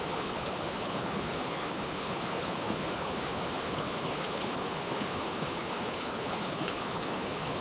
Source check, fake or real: fake